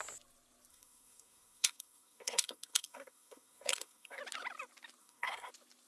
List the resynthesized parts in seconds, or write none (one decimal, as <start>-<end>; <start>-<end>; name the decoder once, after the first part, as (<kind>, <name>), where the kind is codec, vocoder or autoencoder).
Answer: 0.7-4.2 (codec, SNAC); 5.0-5.5

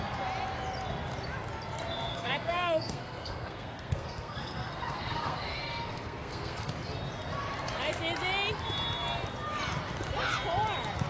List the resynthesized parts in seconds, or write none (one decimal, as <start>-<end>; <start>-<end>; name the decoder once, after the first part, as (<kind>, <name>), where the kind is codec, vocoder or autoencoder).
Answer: 2.1-6.7 (codec, SNAC)

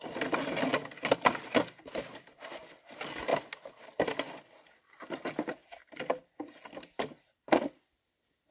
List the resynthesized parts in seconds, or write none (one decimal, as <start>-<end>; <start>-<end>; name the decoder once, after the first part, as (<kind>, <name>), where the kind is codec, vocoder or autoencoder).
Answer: none

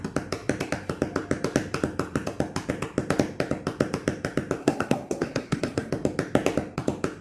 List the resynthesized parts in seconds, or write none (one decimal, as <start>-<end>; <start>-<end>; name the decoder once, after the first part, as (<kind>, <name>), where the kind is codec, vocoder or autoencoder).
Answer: 4.6-5.9 (codec, SNAC)

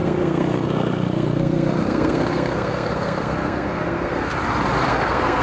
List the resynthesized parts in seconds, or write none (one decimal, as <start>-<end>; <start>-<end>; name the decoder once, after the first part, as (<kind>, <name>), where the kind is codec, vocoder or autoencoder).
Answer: 0.0-4.3 (codec, SNAC); 4.9-5.4

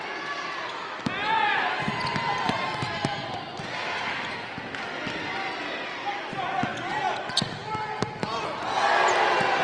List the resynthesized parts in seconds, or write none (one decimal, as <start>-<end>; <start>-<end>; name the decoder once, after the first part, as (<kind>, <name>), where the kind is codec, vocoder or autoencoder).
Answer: none